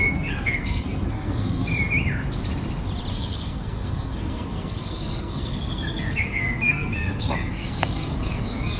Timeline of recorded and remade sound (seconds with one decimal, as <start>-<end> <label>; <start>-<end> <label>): 0.0-1.7 remade; 1.7-3.1 recorded; 3.1-8.8 remade